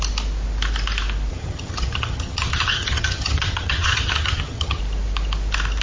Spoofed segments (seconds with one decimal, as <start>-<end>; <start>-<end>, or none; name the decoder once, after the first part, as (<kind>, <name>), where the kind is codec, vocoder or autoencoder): 1.3-4.8 (vocoder, HiFi-GAN)